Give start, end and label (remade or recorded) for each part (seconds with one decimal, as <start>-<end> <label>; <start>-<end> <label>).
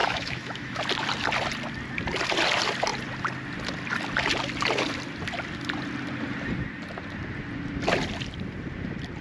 0.0-0.8 remade; 0.8-9.2 recorded